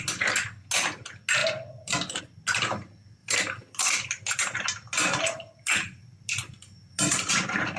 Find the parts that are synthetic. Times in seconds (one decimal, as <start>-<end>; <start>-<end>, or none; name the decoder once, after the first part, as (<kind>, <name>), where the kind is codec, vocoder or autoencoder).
1.4-2.2 (vocoder, BigVGAN v2); 3.2-7.3